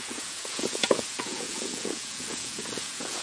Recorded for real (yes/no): no